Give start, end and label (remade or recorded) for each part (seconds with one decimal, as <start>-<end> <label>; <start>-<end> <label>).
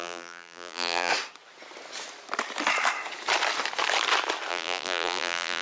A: 0.0-1.1 remade; 1.1-4.5 recorded; 4.5-5.6 remade